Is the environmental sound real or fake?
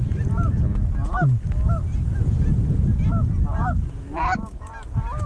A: real